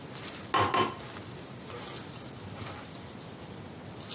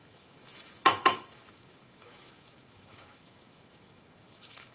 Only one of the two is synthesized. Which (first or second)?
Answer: second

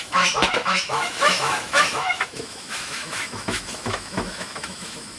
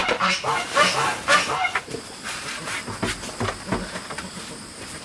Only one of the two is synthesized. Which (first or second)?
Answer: first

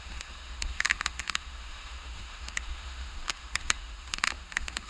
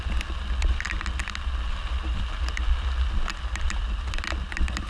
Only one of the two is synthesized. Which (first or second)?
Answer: first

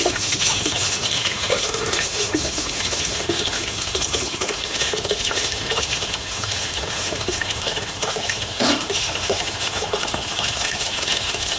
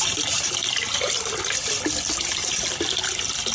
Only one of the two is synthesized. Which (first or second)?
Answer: first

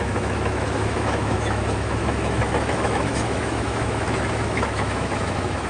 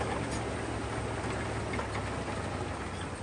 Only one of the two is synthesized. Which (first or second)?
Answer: first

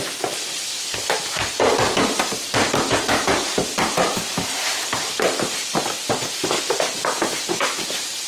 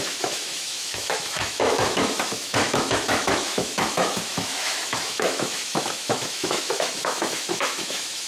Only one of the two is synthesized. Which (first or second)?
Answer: second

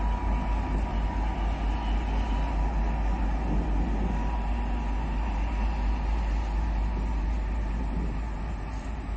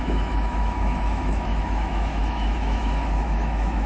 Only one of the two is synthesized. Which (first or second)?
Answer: second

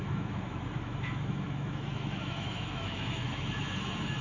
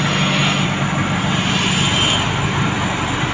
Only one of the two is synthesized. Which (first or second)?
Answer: first